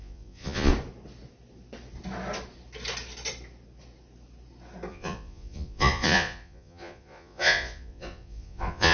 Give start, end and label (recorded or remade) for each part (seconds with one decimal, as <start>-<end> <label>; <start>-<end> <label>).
0.0-0.7 remade; 0.7-4.9 recorded; 4.9-8.9 remade